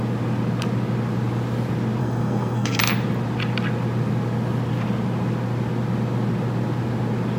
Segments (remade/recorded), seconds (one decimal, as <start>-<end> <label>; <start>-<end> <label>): 0.0-2.0 recorded; 2.0-2.8 remade; 2.8-7.4 recorded